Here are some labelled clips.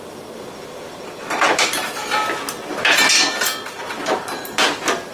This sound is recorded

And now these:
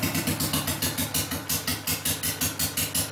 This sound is recorded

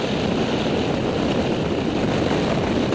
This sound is recorded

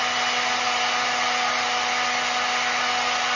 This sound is recorded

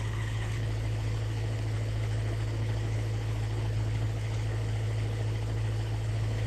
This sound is remade